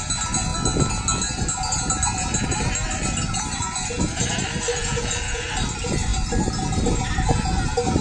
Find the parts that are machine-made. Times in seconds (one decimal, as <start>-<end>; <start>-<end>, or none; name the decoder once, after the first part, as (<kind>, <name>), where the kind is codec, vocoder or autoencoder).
4.8-5.5 (vocoder, Vocos)